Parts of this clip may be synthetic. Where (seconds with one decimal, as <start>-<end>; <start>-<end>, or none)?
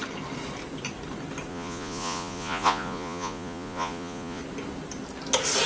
1.5-4.4